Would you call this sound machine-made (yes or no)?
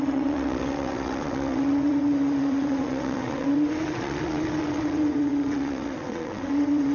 yes